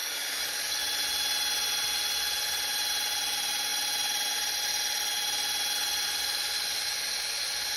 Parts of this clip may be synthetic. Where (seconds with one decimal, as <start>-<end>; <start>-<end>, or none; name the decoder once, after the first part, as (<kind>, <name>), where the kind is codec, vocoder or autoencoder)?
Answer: 0.0-0.8 (codec, DAC)

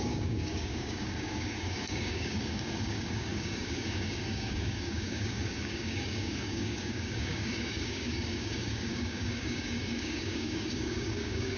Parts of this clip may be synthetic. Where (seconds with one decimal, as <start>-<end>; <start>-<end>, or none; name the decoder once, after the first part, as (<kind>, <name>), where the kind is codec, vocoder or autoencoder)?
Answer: 0.0-11.6 (codec, DAC)

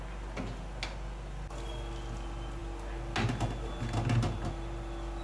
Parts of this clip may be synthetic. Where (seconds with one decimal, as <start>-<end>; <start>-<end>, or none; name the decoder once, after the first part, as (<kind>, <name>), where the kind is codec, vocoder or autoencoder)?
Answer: none

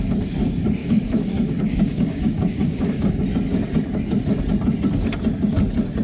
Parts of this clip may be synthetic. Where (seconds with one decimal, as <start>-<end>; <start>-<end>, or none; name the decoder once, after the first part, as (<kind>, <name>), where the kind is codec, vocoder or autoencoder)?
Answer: 0.8-3.2 (codec, DAC)

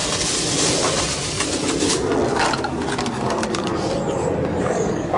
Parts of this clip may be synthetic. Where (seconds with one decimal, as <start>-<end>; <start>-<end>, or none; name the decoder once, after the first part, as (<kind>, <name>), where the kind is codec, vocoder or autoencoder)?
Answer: 3.1-3.7 (codec, DAC); 4.6-5.2

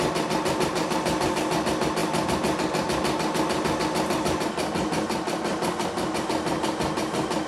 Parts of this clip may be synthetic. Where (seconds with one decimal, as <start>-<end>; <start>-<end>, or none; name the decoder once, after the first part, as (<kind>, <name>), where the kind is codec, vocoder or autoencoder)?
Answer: none

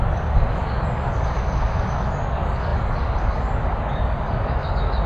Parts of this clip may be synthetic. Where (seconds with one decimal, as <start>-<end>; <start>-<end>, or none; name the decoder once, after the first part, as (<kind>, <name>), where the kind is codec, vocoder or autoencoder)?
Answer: 0.0-5.1 (codec, DAC)